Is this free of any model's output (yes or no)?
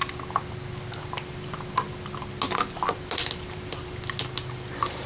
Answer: yes